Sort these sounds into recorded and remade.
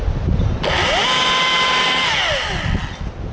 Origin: recorded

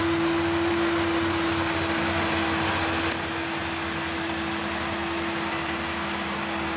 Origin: recorded